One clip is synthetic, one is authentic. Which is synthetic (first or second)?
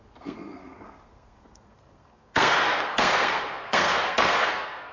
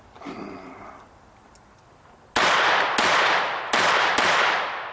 first